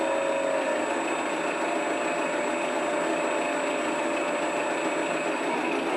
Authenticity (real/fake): real